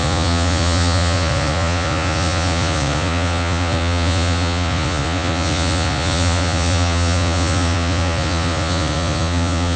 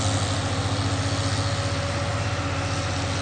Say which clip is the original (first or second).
second